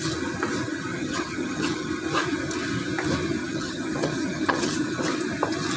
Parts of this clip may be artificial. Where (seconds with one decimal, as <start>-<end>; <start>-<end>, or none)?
0.9-1.9; 3.4-5.0